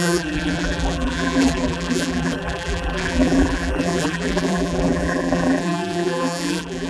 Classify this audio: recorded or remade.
remade